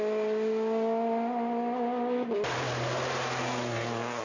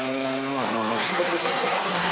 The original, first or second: first